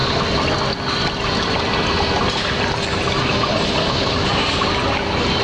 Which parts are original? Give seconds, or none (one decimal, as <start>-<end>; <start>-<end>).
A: 0.0-5.4